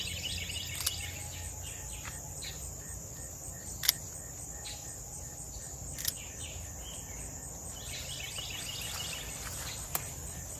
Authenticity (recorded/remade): recorded